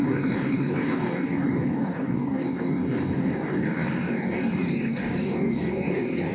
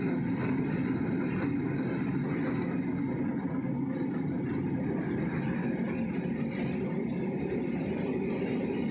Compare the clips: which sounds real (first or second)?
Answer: second